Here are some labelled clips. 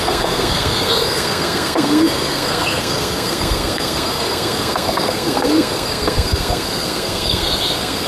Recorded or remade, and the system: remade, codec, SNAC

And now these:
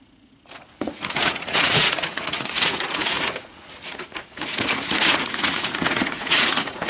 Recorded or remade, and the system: remade, vocoder, Vocos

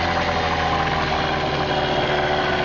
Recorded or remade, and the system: recorded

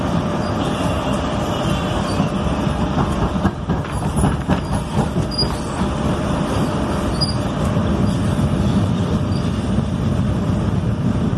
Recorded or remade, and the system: remade, vocoder, BigVGAN v2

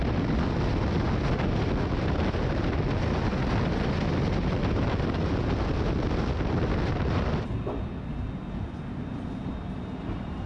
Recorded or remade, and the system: recorded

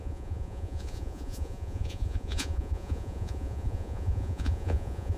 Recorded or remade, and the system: remade, vocoder, Vocos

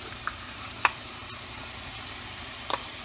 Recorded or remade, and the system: remade, vocoder, BigVGAN v2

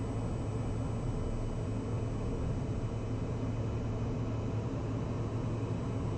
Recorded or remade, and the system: recorded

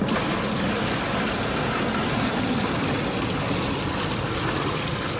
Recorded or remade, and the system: recorded